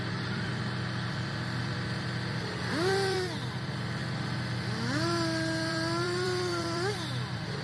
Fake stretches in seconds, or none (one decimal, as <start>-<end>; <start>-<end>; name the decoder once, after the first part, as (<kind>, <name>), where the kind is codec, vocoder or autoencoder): 0.0-4.0 (vocoder, BigVGAN v2); 5.7-7.6